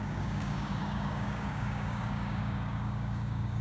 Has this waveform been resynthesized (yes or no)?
yes